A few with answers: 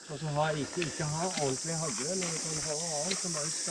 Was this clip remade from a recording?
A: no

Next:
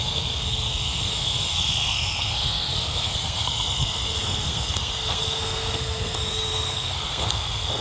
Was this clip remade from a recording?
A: yes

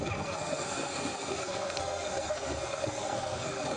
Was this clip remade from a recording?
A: yes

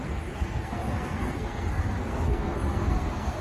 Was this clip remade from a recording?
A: yes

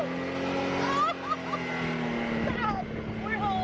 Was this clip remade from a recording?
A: no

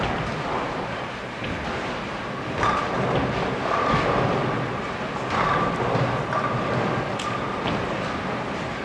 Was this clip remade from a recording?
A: no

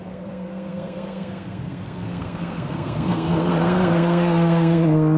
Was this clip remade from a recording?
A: yes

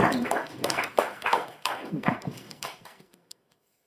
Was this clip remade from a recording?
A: yes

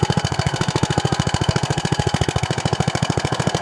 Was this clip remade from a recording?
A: yes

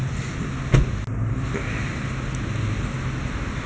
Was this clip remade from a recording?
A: no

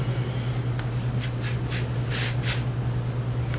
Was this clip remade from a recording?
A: no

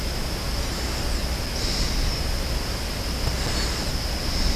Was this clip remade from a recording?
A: no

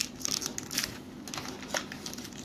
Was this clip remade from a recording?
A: no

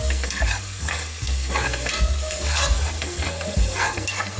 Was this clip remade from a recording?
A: yes